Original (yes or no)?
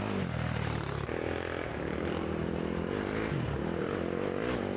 yes